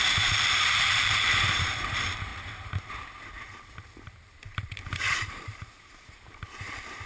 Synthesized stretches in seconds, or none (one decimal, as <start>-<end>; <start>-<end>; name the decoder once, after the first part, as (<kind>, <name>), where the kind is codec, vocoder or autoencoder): 0.0-2.3 (vocoder, BigVGAN v2); 2.9-7.1